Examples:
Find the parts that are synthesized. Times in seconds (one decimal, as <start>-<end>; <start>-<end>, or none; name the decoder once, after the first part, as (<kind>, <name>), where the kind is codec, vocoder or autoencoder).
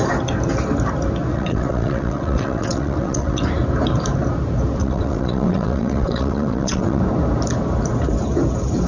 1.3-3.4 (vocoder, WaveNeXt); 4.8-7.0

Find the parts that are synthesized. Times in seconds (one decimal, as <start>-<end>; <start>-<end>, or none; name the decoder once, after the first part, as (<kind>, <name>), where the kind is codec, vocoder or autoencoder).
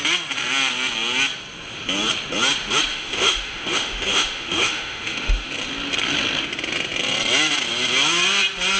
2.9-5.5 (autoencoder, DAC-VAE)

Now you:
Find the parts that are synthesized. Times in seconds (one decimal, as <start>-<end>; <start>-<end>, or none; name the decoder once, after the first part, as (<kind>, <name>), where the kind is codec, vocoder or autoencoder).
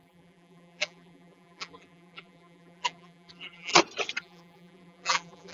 0.0-3.7 (vocoder, BigVGAN v2); 4.2-5.5